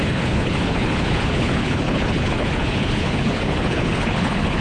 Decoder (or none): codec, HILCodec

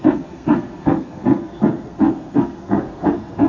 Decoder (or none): codec, SNAC